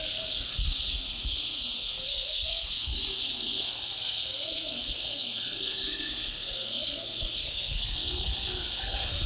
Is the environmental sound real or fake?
fake